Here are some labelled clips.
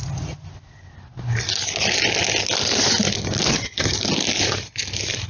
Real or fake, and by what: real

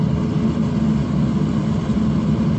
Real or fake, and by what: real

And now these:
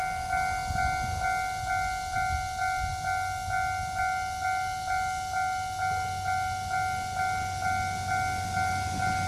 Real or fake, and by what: real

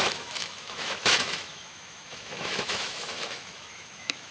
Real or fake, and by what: fake, autoencoder, DAC-VAE